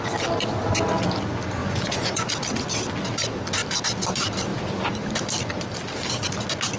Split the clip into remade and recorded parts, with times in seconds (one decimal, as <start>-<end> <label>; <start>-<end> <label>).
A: 0.0-1.6 recorded; 1.6-2.3 remade; 2.3-6.8 recorded

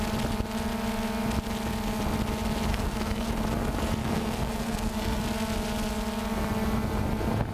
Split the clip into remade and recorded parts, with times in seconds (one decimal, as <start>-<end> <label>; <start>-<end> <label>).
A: 0.0-2.7 recorded; 2.7-3.3 remade; 3.3-4.0 recorded; 4.0-5.2 remade; 5.2-7.5 recorded

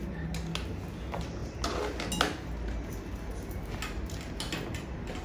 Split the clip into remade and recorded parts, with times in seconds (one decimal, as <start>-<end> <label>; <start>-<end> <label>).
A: 0.0-5.2 recorded

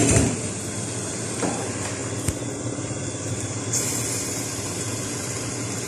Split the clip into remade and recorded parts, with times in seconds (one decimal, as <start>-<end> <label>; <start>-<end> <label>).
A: 0.0-5.9 recorded

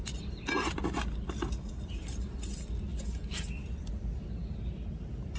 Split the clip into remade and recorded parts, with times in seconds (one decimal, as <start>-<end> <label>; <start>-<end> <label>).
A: 0.0-5.4 recorded

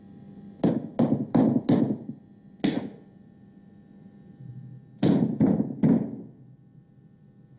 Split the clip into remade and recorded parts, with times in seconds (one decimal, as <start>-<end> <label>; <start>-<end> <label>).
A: 0.0-7.6 recorded

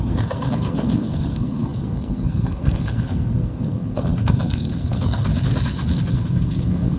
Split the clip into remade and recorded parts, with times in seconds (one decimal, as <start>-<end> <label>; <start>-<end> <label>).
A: 0.0-5.3 remade; 5.3-6.1 recorded; 6.1-7.0 remade

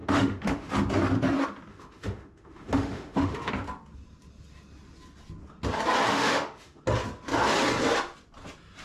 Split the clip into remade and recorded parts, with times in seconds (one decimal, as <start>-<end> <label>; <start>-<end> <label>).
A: 0.0-0.7 remade; 0.7-1.7 recorded; 1.7-3.5 remade; 3.5-6.1 recorded; 6.1-6.8 remade; 6.8-8.8 recorded